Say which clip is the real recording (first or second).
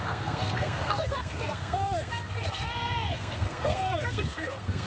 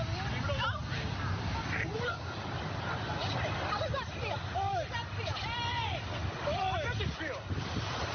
second